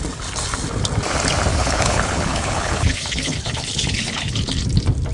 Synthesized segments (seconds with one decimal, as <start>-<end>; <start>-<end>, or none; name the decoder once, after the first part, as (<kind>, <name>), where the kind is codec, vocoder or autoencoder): 1.5-4.6 (codec, HILCodec)